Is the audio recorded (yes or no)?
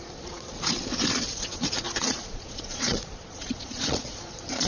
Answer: no